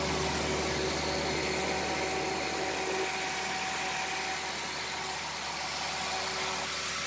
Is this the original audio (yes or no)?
yes